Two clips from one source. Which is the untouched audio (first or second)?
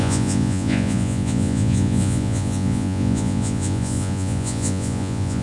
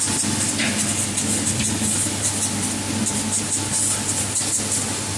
second